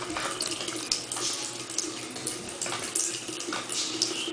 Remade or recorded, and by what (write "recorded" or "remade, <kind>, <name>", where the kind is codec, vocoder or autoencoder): recorded